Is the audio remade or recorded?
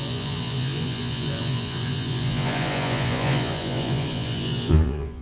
remade